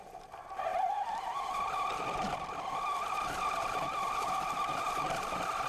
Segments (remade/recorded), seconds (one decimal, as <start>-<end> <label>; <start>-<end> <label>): 0.0-0.7 recorded; 0.7-2.5 remade; 2.5-5.7 recorded